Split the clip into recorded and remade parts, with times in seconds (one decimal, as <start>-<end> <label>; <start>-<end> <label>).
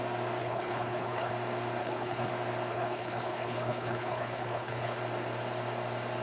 0.0-0.4 recorded; 0.4-1.3 remade; 1.3-1.8 recorded; 1.8-2.3 remade; 2.3-2.7 recorded; 2.7-5.0 remade; 5.0-6.2 recorded